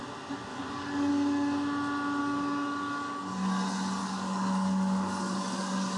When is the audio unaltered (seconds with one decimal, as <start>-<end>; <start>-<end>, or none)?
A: 0.0-0.5; 1.1-2.2; 3.2-4.0